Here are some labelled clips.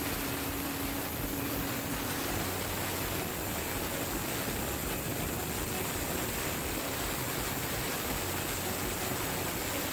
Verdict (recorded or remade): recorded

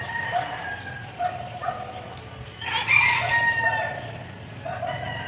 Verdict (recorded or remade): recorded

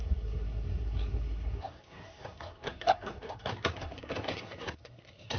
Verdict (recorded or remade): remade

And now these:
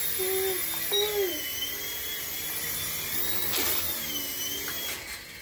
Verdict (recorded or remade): recorded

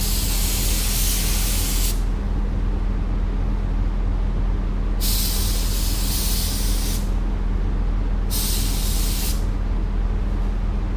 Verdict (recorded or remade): recorded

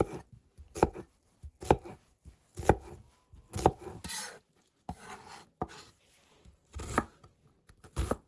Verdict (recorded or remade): recorded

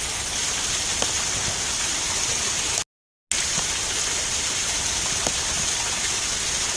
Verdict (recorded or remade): recorded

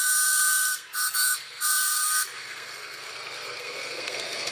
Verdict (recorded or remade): remade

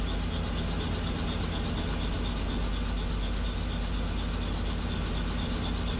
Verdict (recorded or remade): recorded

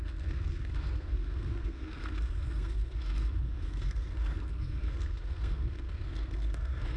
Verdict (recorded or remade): remade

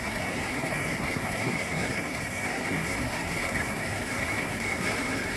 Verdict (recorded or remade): remade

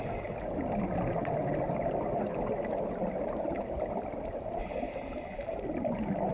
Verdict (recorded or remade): recorded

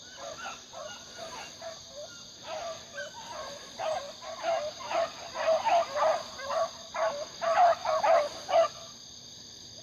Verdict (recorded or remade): recorded